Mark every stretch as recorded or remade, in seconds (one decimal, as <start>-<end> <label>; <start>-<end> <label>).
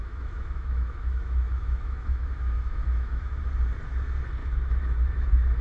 0.0-3.4 remade; 3.4-4.4 recorded; 4.4-5.6 remade